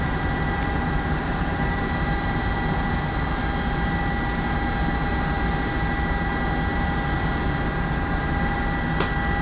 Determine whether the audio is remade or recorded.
recorded